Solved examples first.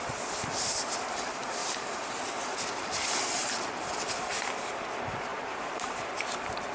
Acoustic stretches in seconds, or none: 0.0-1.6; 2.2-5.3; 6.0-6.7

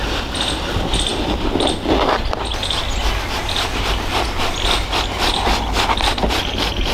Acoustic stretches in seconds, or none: 0.0-6.9

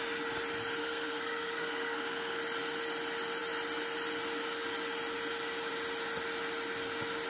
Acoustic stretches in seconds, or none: 0.0-0.8; 2.4-7.3

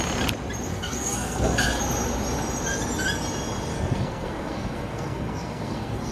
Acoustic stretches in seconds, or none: 0.0-0.7; 1.8-3.7

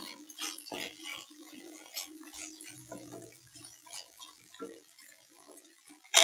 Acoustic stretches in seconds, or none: none

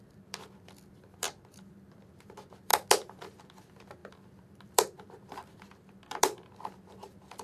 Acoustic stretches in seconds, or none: 2.7-3.6